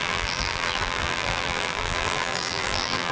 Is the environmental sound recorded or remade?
remade